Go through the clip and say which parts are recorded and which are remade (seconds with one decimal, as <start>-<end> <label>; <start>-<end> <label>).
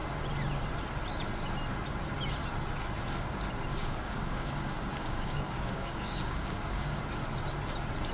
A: 0.0-3.7 recorded; 3.7-7.0 remade; 7.0-8.1 recorded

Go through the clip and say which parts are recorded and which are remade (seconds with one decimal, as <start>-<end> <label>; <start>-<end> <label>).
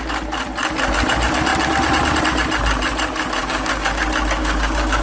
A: 0.0-3.4 recorded; 3.4-4.0 remade; 4.0-4.4 recorded; 4.4-5.0 remade